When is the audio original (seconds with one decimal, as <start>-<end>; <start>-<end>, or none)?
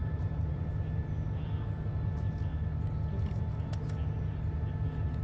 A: 0.7-5.2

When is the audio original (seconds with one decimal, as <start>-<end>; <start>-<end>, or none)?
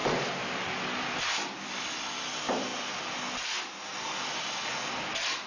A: 0.6-5.5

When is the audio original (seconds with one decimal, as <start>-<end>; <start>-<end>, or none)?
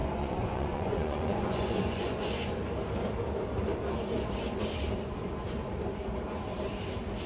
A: 2.5-7.3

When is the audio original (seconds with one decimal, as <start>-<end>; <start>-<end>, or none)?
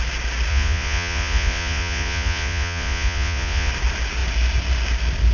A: 0.0-0.5; 3.7-5.3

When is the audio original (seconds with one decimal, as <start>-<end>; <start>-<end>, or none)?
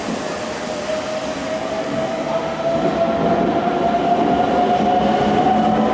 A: 0.0-1.6; 2.3-5.9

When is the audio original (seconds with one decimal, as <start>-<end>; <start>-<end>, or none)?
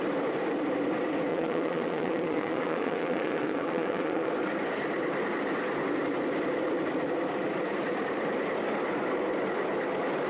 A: 0.0-1.3; 4.3-10.3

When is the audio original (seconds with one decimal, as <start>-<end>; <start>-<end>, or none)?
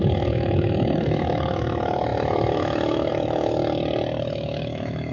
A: 3.6-4.2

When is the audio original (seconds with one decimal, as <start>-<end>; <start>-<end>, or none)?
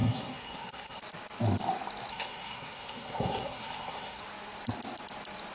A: 1.0-2.1; 4.2-5.5